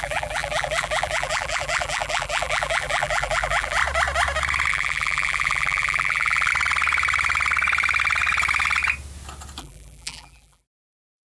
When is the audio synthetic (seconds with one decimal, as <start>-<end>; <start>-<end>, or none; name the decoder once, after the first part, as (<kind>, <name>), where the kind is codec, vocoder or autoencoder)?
0.0-3.8 (vocoder, BigVGAN v2); 4.7-6.5; 9.6-11.3